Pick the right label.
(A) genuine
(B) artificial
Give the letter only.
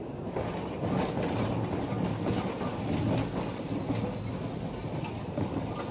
A